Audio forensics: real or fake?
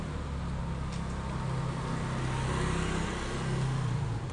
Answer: real